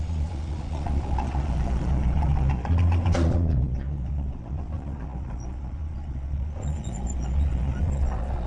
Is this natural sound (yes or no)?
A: no